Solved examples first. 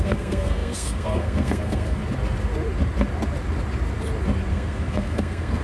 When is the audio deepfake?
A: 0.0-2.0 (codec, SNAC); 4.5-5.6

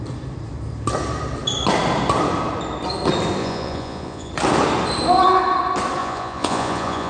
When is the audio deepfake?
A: 3.4-4.3 (vocoder, Vocos); 6.0-7.1